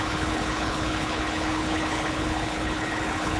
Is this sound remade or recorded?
remade